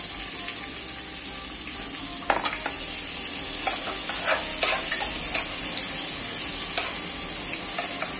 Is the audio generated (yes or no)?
no